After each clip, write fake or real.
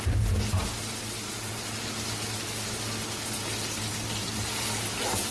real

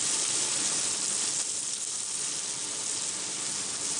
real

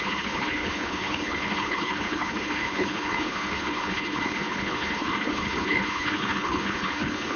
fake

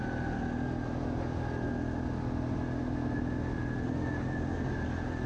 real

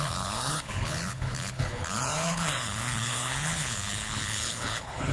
fake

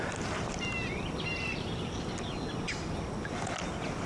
real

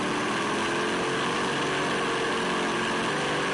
real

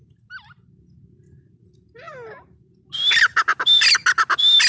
real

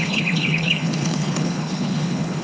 fake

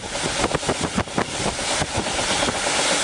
real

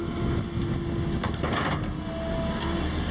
real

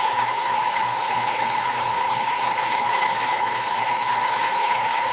fake